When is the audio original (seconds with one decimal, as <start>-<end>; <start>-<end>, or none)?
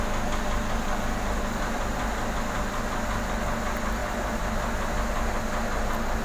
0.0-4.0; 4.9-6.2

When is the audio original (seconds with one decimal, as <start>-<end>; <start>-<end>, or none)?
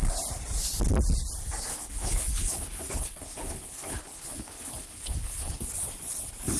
0.0-1.7; 5.7-6.6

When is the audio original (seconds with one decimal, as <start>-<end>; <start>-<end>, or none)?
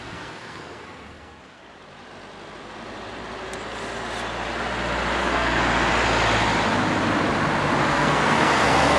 1.6-5.2; 5.9-7.9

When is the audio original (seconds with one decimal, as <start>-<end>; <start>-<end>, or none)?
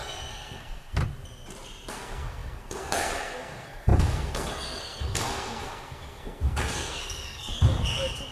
1.0-1.9